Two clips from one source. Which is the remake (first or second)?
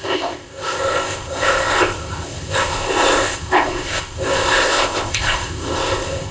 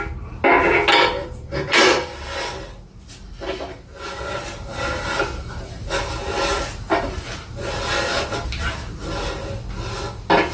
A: first